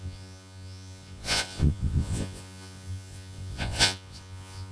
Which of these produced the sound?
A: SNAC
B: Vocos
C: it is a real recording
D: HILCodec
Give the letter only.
B